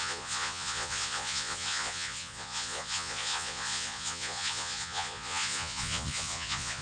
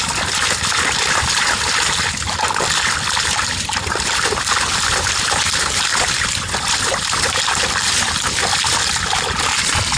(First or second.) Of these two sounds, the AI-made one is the first